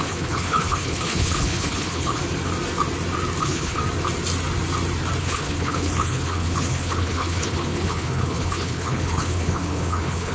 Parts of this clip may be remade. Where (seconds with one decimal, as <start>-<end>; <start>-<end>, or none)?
0.0-2.2; 3.4-3.8; 5.2-10.3

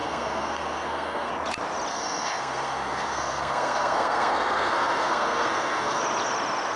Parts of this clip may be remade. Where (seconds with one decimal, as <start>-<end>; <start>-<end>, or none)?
0.0-1.3; 1.9-6.0

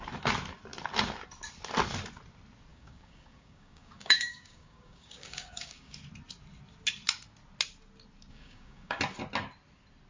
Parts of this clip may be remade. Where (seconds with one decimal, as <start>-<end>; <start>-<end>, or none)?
2.7-6.0; 8.3-9.0

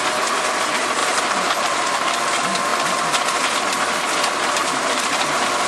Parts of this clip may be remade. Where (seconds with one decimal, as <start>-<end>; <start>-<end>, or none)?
1.0-2.2; 4.6-5.3

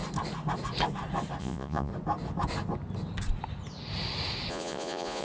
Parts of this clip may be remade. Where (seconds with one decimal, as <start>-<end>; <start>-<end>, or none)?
1.4-1.9; 4.5-5.2

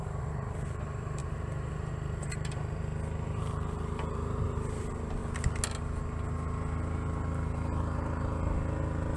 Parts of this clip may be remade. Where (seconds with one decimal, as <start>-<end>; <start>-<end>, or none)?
0.0-2.9; 3.4-5.2

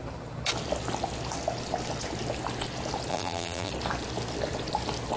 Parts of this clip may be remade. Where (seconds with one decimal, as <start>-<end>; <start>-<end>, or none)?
3.1-3.7